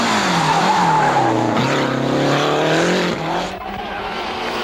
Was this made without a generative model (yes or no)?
yes